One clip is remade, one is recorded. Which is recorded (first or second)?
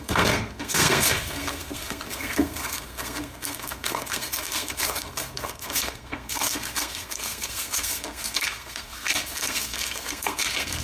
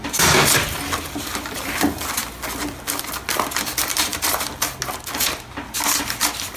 second